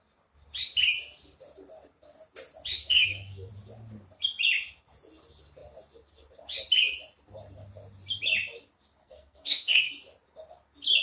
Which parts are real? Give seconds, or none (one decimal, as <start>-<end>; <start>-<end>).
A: 0.0-2.8; 3.5-9.0; 9.9-11.0